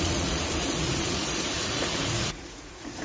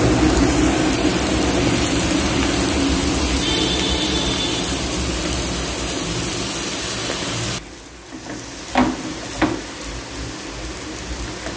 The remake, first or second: first